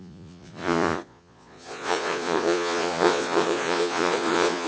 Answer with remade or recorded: remade